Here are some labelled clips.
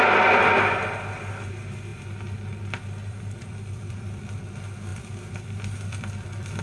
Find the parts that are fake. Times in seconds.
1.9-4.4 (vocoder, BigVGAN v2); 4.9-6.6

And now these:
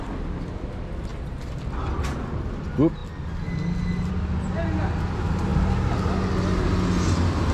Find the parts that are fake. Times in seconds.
1.1-1.6 (vocoder, BigVGAN v2)

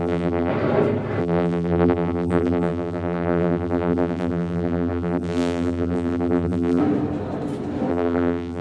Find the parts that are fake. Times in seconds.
0.0-0.5 (vocoder, BigVGAN v2); 1.2-6.8; 7.9-8.6

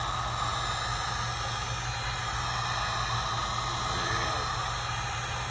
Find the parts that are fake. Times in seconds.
none

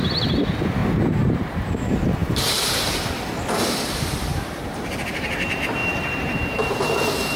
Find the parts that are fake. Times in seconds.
0.8-1.8 (vocoder, BigVGAN v2); 2.2-3.0; 4.3-5.3; 5.8-7.4

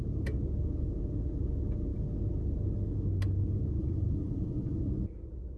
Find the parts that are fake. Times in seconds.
3.8-4.8 (vocoder, BigVGAN v2)

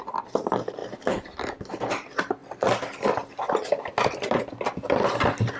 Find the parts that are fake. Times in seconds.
0.0-2.4 (vocoder, BigVGAN v2)